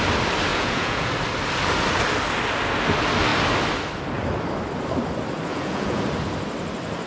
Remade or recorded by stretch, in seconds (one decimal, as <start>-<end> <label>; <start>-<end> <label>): 0.0-0.5 recorded; 0.5-1.1 remade; 1.1-5.5 recorded; 5.5-6.0 remade; 6.0-7.1 recorded